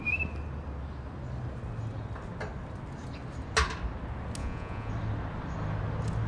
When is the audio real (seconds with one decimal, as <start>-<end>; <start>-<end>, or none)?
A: 0.0-4.4; 4.9-6.3